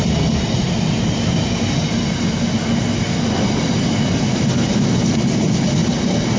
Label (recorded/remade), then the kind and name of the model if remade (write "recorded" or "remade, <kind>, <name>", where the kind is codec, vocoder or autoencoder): recorded